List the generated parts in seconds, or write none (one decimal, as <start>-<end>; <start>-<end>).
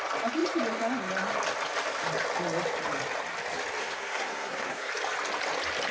3.8-4.9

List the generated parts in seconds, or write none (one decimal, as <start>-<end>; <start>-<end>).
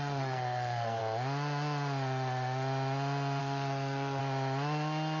0.0-1.0; 3.4-4.2